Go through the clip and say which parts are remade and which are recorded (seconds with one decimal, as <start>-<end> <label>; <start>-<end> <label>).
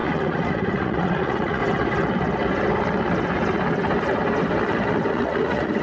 0.0-1.6 remade; 1.6-5.1 recorded; 5.1-5.8 remade